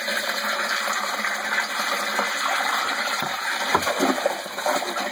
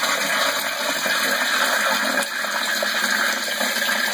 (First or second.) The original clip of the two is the second